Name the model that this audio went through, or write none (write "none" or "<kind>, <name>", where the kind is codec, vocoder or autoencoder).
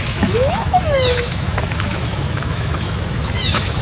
autoencoder, DAC-VAE